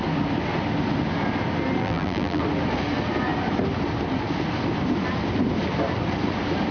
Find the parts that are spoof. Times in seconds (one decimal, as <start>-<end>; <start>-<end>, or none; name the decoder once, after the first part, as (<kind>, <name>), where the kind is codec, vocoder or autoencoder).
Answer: 1.8-2.4 (vocoder, BigVGAN v2)

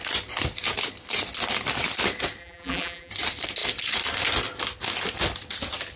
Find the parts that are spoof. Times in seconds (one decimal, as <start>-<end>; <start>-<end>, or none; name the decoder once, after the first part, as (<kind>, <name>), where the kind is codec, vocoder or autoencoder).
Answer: 2.4-3.1 (vocoder, BigVGAN v2)

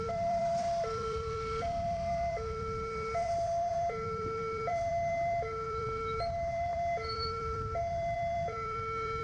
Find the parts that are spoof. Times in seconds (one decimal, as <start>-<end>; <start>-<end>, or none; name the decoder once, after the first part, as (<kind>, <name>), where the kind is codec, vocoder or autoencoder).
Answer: 0.0-9.2 (vocoder, BigVGAN v2)

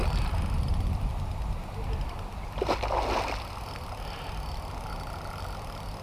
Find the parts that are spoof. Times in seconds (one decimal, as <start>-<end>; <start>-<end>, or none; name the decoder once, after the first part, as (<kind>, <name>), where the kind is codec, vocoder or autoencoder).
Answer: 0.0-1.1 (vocoder, BigVGAN v2)

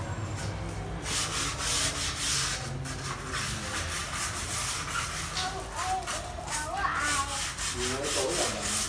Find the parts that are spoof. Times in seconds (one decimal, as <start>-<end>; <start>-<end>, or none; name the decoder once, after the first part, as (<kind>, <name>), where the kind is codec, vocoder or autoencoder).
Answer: none